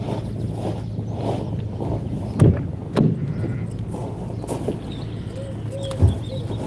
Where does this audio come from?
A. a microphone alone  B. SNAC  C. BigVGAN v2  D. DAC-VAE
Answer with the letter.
A